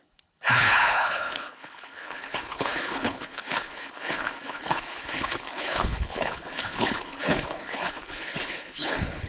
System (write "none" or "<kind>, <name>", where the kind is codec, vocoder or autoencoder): codec, HILCodec